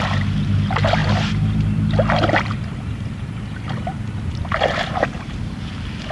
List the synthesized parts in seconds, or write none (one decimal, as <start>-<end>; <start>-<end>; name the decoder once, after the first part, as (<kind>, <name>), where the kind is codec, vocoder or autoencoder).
none